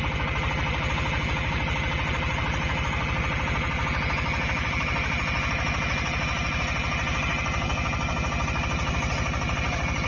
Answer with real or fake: real